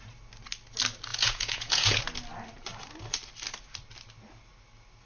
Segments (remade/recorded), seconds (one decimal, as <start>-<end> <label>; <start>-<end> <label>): 0.0-1.1 recorded; 1.1-2.0 remade; 2.0-5.1 recorded